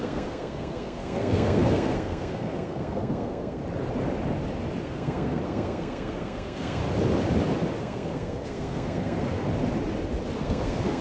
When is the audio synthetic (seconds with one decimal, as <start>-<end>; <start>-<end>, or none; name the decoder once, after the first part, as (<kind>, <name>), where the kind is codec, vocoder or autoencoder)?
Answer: 0.0-3.6 (codec, SNAC); 4.8-6.8; 7.8-9.4; 10.4-11.0